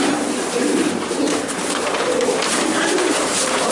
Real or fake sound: fake